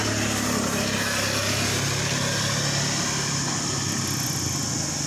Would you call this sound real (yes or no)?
yes